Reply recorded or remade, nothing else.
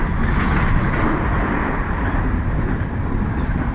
recorded